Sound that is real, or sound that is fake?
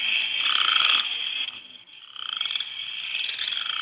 real